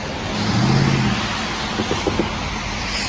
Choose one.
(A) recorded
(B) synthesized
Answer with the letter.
A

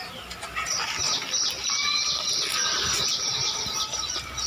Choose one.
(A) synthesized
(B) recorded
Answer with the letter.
B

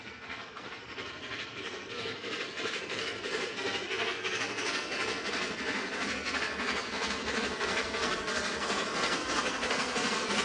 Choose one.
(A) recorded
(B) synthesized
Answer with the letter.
B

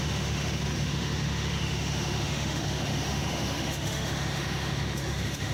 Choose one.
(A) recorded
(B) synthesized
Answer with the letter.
B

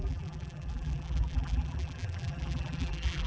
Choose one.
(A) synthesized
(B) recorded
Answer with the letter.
A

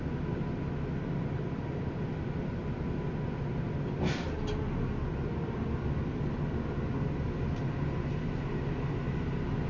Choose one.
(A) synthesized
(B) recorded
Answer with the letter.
B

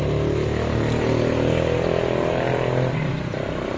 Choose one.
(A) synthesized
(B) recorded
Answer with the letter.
B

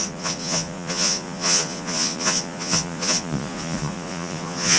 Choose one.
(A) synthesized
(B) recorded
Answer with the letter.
A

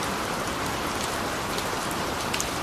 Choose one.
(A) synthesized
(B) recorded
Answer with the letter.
B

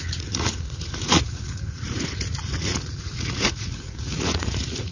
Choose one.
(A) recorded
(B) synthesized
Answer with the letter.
B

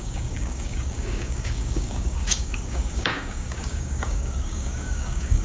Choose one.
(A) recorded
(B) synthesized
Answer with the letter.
B